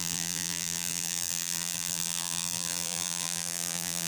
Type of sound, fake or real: fake